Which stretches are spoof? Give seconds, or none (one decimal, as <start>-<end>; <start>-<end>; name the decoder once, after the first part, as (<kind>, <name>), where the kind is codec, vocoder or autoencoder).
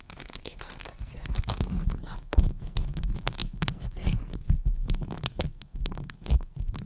0.0-6.9 (codec, SNAC)